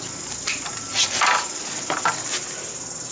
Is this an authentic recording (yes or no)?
yes